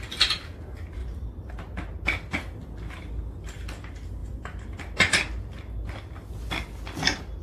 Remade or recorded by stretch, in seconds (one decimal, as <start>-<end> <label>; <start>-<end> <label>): 0.0-1.0 recorded; 1.0-1.5 remade; 1.5-4.2 recorded; 4.2-4.8 remade; 4.8-7.4 recorded